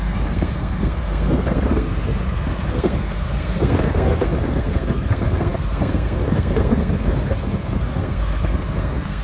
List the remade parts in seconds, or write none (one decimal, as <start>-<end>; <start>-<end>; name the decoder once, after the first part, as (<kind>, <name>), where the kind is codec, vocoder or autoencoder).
0.0-9.2 (codec, SNAC)